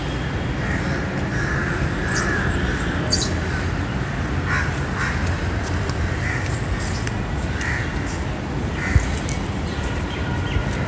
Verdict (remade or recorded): recorded